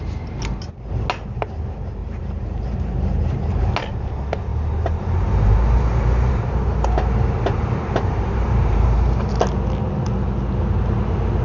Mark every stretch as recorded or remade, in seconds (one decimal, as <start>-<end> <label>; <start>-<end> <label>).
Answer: 0.0-2.0 recorded; 2.0-3.6 remade; 3.6-4.5 recorded; 4.5-9.3 remade; 9.3-11.4 recorded